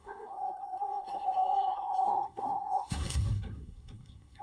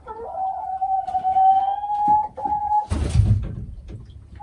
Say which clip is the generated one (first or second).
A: first